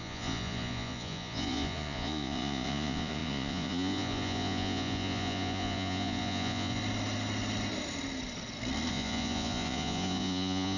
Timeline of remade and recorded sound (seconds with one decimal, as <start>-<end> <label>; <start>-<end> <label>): 0.0-6.8 remade; 6.8-8.9 recorded; 8.9-10.8 remade